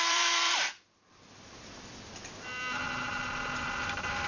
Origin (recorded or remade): remade